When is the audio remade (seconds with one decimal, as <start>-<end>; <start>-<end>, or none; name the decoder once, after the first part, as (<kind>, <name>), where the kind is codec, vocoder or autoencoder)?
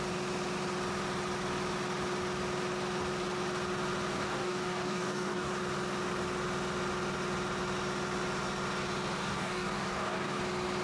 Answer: 4.1-5.5 (codec, DAC); 9.2-10.4